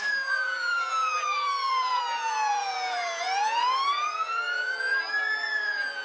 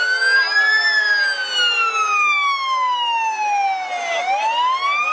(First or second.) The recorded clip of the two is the second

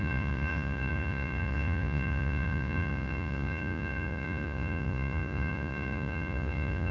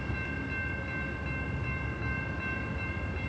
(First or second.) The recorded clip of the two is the second